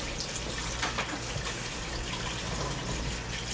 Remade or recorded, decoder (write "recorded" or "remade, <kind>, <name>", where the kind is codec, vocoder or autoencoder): recorded